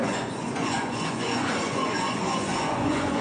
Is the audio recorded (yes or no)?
no